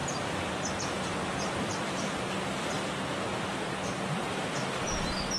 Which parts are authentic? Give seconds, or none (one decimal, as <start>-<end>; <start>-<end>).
0.7-1.1; 2.2-5.4